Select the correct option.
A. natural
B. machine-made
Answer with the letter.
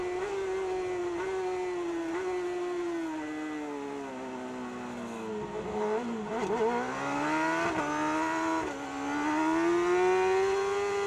A